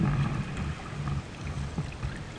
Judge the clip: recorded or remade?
recorded